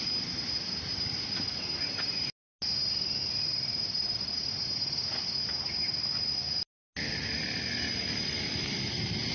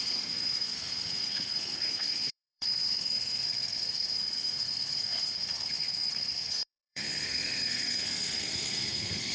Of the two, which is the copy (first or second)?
second